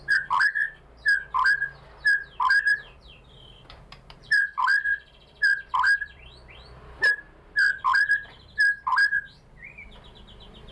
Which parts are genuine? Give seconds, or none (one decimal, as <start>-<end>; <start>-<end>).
0.6-2.4